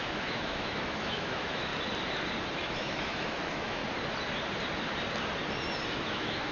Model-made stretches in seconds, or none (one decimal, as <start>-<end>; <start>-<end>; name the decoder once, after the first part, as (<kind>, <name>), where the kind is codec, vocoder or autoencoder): 0.0-1.7 (autoencoder, DAC-VAE); 2.5-3.8; 5.9-6.5